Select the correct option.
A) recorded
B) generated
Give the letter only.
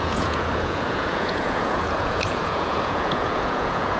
B